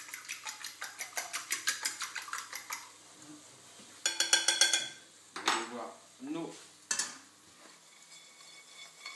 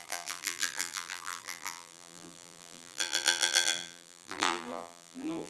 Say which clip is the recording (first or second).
first